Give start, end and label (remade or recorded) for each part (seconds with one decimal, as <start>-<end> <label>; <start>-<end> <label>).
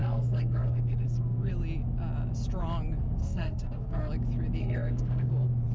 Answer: 0.0-1.5 remade; 1.5-3.2 recorded; 3.2-4.1 remade; 4.1-4.6 recorded; 4.6-5.3 remade; 5.3-5.7 recorded